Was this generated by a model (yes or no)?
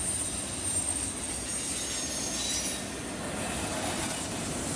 no